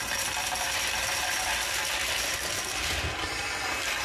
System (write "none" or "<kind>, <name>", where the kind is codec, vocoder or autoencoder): none